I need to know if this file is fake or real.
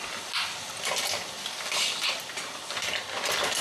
real